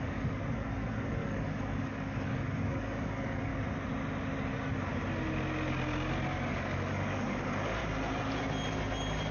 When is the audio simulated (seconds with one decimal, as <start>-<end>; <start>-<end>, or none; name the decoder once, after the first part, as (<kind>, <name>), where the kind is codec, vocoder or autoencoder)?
0.0-0.4 (codec, DAC); 1.1-3.5; 6.5-7.8